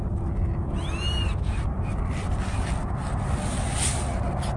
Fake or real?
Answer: real